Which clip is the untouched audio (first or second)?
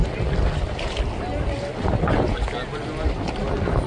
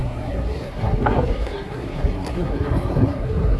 first